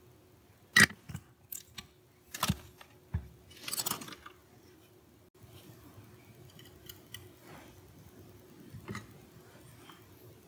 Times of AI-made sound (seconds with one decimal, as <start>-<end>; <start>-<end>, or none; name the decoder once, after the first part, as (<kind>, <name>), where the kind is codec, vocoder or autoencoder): none